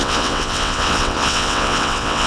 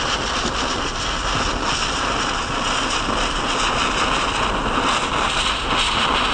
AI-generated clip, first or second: first